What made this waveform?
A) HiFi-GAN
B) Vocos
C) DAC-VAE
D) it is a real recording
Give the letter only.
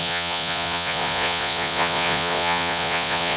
B